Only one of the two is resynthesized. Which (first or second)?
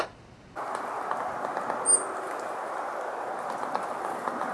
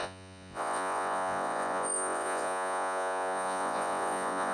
second